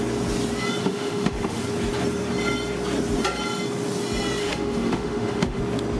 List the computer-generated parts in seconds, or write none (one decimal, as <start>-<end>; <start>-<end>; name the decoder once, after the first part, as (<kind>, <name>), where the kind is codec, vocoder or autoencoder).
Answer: 0.8-1.6 (autoencoder, DAC-VAE); 4.4-5.6

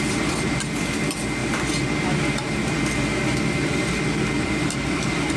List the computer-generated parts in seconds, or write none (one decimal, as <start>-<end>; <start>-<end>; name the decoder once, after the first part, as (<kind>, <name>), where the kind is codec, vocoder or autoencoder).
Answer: none